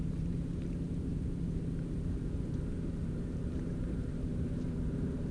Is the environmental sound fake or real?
fake